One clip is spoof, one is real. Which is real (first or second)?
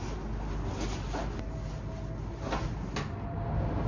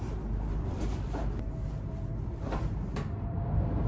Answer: first